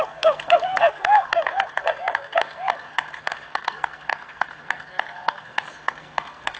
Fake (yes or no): yes